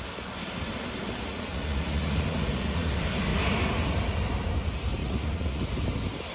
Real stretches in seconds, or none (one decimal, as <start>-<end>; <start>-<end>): 0.0-1.3; 2.9-5.0; 5.7-6.3

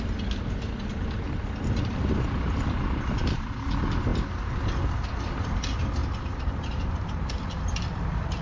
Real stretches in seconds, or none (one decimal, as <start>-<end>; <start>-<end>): 0.0-6.0; 7.6-8.4